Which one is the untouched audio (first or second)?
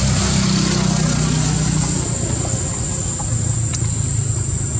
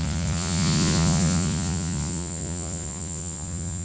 first